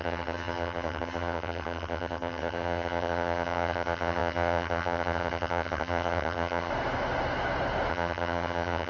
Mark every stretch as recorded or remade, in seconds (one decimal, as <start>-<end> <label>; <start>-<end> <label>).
0.0-6.7 remade; 6.7-7.9 recorded; 7.9-8.9 remade